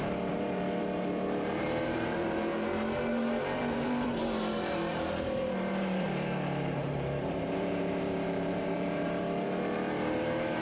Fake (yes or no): yes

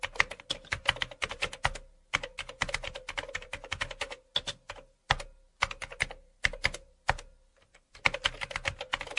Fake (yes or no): no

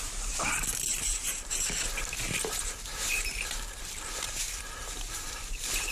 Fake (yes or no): yes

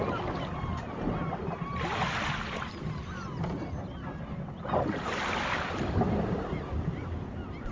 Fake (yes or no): no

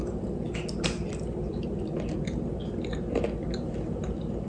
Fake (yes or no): no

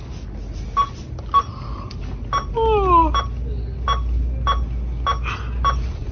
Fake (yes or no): no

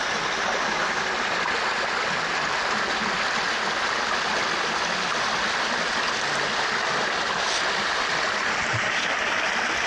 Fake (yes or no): no